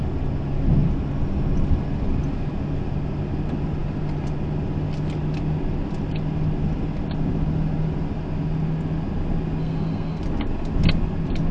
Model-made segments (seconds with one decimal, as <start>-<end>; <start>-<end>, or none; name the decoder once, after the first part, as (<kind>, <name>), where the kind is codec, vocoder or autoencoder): 9.6-10.2 (codec, SNAC)